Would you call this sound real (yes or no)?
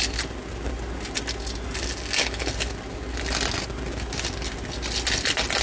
yes